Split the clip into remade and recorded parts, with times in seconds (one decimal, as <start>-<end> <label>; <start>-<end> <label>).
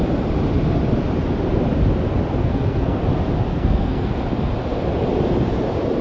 0.0-2.4 recorded; 2.4-3.0 remade; 3.0-3.5 recorded; 3.5-4.1 remade; 4.1-6.0 recorded